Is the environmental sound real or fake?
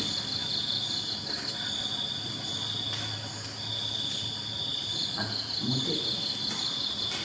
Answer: real